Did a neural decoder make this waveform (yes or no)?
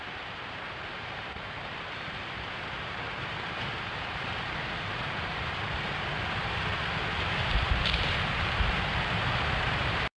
yes